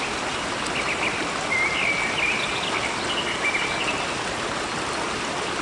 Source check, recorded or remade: recorded